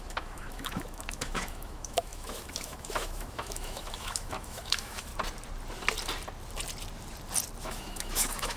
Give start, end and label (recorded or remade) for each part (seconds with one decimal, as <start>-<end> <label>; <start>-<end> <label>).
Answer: 0.0-5.1 remade; 5.1-7.6 recorded; 7.6-8.6 remade

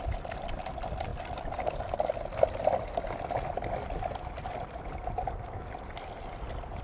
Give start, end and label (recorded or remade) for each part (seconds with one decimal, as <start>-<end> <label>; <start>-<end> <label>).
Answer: 0.0-6.8 recorded